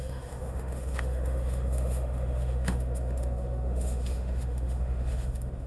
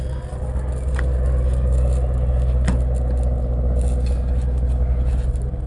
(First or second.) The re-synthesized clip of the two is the first